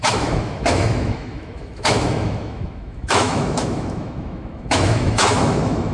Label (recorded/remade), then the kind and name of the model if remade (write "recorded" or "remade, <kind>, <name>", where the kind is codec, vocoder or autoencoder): remade, autoencoder, DAC-VAE